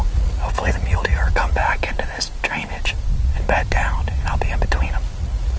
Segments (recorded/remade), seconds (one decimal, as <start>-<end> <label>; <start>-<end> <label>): 0.0-1.6 remade; 1.6-5.0 recorded; 5.0-5.6 remade